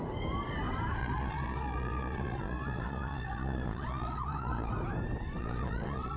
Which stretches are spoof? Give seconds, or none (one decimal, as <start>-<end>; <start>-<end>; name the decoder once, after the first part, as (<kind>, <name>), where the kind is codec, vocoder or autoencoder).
1.0-4.7 (vocoder, Vocos); 5.4-6.2